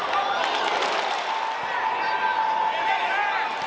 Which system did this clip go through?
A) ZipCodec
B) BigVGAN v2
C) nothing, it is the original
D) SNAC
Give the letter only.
C